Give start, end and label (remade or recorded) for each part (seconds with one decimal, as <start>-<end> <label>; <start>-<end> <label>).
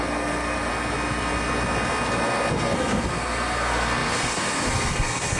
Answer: 0.0-0.7 remade; 0.7-2.5 recorded; 2.5-5.4 remade